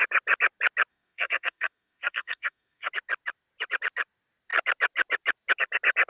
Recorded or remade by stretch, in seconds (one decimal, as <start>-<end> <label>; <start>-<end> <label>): 0.0-0.9 recorded; 0.9-2.9 remade; 2.9-6.1 recorded